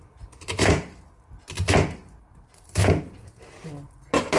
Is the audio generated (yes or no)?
no